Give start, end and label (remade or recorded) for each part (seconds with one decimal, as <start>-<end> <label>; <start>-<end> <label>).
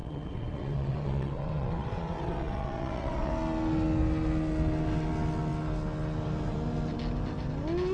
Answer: 0.0-3.3 remade; 3.3-7.9 recorded